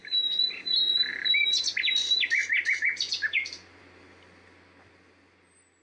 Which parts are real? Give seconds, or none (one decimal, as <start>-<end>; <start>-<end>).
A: 0.0-5.8

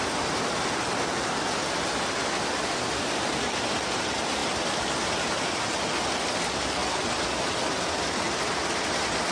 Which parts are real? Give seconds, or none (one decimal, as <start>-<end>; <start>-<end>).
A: 0.0-9.3

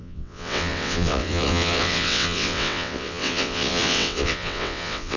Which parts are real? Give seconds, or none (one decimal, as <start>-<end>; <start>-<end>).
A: none

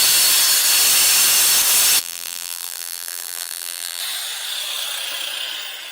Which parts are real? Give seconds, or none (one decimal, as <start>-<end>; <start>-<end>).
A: 0.0-2.0; 4.0-5.9

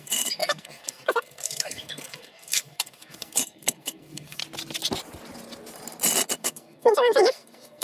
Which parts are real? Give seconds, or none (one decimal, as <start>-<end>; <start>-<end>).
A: 4.4-6.4

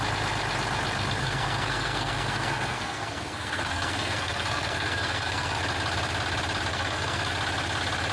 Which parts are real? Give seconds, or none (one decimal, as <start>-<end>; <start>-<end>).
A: 0.0-1.2; 5.6-6.7; 7.3-8.1